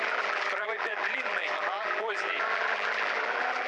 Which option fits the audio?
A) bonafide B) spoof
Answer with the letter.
B